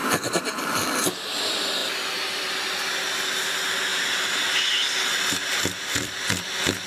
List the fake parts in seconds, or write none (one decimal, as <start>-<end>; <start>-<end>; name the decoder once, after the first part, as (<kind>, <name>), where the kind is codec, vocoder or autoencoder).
0.9-6.9 (vocoder, BigVGAN v2)